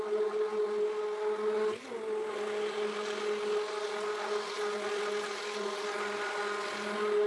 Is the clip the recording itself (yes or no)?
yes